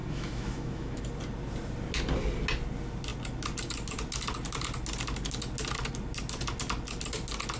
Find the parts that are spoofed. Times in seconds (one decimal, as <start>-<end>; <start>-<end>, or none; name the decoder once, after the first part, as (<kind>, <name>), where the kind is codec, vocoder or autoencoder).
0.0-1.0 (autoencoder, DAC-VAE)